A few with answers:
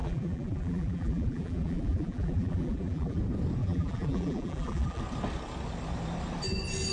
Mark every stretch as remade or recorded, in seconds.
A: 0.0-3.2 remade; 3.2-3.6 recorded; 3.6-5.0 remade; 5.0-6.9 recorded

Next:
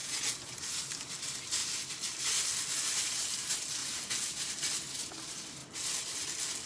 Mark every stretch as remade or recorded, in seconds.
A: 0.0-0.8 remade; 0.8-3.8 recorded; 3.8-4.4 remade; 4.4-6.7 recorded

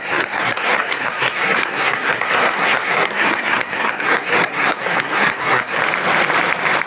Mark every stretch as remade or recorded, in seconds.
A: 0.0-5.8 remade; 5.8-6.9 recorded

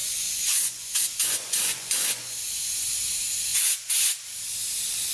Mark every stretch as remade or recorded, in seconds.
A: 0.0-3.1 remade; 3.1-3.5 recorded; 3.5-4.0 remade; 4.0-5.1 recorded

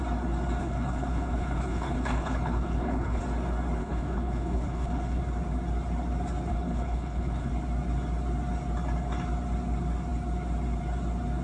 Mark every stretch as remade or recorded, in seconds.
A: 0.0-0.6 recorded; 0.6-3.2 remade; 3.2-3.8 recorded; 3.8-5.2 remade; 5.2-6.5 recorded; 6.5-7.5 remade; 7.5-11.4 recorded

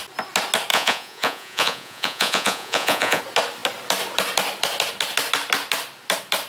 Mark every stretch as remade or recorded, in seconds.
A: 0.0-0.7 recorded; 0.7-3.2 remade; 3.2-6.5 recorded

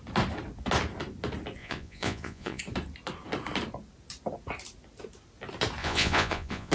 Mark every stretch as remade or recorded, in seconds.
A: 0.0-1.6 recorded; 1.6-2.6 remade; 2.6-5.8 recorded; 5.8-6.7 remade

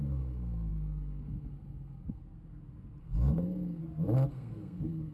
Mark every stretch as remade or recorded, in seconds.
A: 0.0-2.2 remade; 2.2-3.0 recorded; 3.0-3.8 remade; 3.8-4.3 recorded; 4.3-5.1 remade